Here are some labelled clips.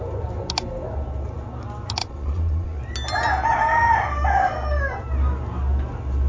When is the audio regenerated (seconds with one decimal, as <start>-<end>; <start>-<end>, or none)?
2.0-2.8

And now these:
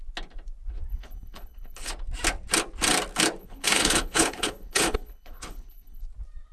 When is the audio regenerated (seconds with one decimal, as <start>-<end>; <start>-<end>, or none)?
0.9-1.9; 3.4-6.0

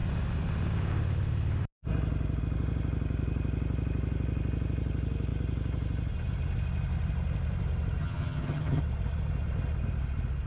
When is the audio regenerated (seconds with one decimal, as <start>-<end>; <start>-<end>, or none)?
8.0-8.8